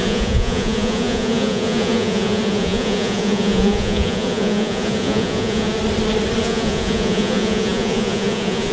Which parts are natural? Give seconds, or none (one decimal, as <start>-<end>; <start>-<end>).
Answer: 5.8-6.4